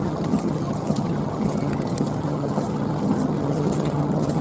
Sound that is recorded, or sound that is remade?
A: remade